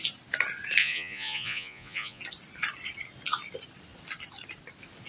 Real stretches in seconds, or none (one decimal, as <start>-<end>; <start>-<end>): 0.0-0.8; 2.2-5.1